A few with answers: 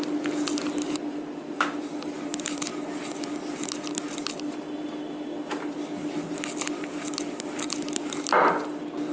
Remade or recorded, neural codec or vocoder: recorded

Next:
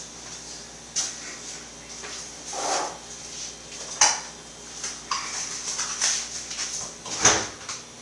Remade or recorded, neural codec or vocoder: recorded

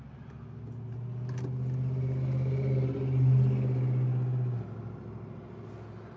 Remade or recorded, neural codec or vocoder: recorded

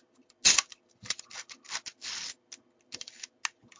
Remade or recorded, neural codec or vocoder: recorded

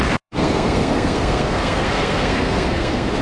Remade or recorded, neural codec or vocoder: remade, codec, SNAC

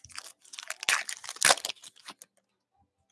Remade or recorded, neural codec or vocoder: recorded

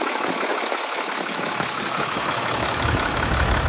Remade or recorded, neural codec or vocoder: remade, autoencoder, DAC-VAE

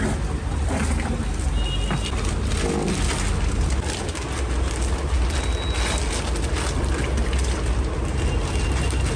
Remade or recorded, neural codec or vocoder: recorded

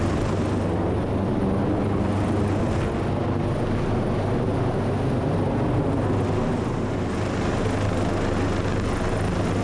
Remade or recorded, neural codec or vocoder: recorded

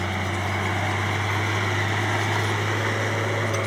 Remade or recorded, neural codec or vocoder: recorded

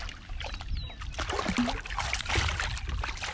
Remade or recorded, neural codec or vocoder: recorded